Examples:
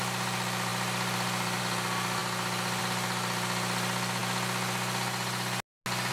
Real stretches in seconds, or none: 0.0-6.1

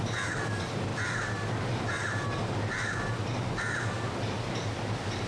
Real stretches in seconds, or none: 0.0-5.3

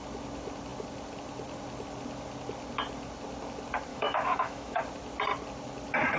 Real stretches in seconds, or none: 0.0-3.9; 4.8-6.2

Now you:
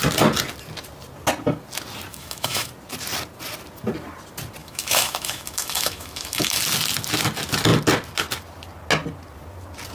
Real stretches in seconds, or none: 0.0-2.1; 2.7-4.6; 6.6-9.9

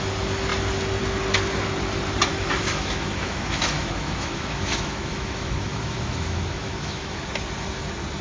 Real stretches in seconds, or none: 0.0-2.3; 7.2-8.2